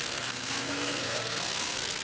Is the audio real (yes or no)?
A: no